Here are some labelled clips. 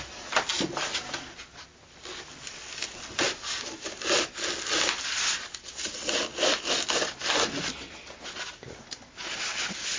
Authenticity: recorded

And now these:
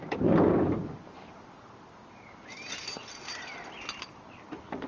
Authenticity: recorded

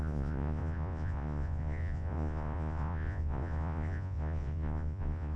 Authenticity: remade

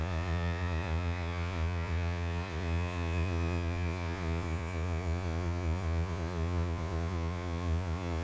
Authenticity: remade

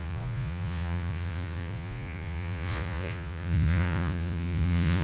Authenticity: remade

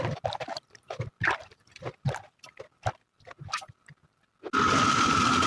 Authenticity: recorded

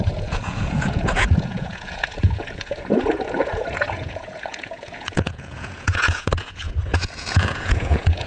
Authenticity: remade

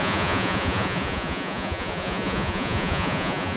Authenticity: remade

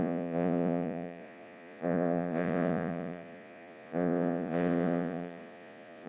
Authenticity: remade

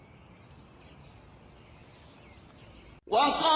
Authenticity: recorded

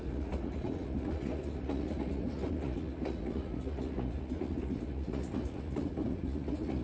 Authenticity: remade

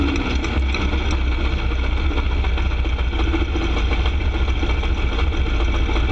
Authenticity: recorded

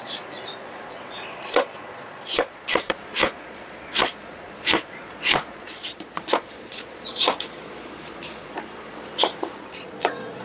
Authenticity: remade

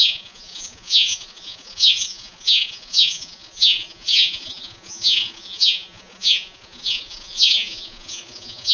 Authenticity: remade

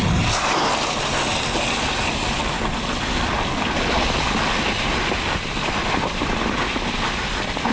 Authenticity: recorded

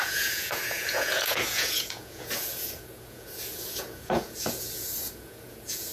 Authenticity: remade